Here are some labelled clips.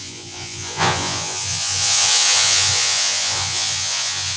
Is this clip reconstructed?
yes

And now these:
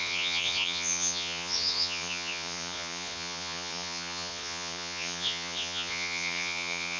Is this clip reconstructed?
yes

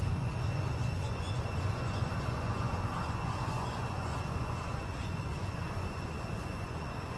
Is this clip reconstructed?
yes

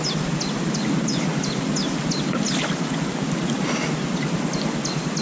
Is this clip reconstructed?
no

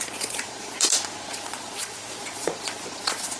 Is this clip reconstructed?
yes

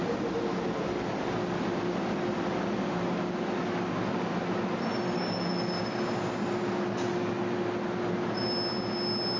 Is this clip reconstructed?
no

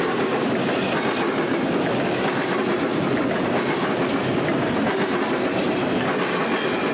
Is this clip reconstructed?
no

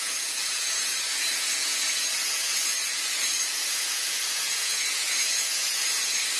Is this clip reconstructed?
yes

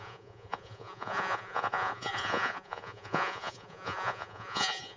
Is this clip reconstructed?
yes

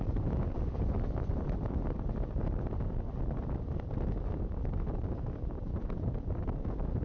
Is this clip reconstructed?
no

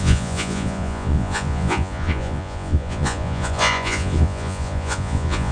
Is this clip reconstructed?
yes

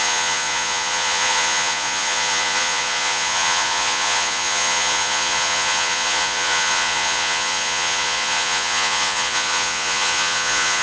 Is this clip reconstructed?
yes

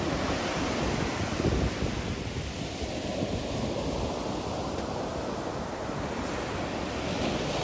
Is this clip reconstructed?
no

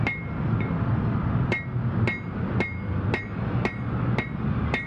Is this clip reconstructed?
no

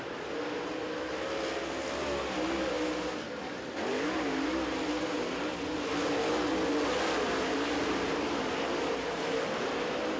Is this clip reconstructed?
no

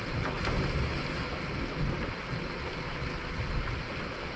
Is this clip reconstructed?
no